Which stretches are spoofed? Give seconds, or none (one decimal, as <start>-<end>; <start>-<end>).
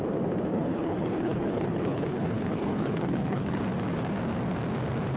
0.5-3.6